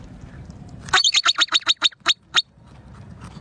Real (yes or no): yes